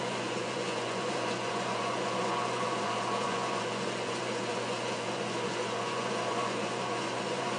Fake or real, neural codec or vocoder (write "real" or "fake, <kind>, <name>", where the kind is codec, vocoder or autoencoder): fake, vocoder, Vocos